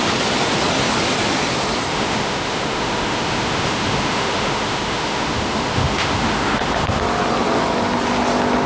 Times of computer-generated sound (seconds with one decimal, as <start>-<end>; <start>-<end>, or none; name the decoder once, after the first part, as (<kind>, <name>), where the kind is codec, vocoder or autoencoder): 1.9-7.0 (autoencoder, DAC-VAE)